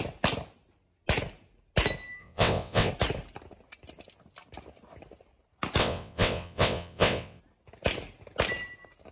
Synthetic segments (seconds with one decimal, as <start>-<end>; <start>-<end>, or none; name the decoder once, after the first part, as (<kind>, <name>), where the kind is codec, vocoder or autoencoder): 2.2-2.9 (vocoder, WaveNeXt); 5.8-7.4